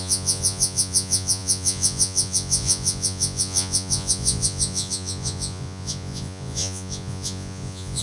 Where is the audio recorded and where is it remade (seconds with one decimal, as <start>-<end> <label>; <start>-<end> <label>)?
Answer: 0.0-8.0 remade